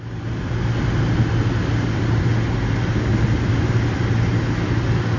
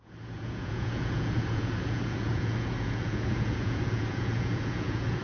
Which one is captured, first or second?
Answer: first